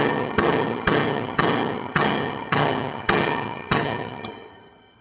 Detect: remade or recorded remade